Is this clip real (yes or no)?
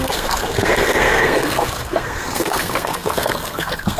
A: no